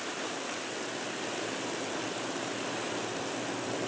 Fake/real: fake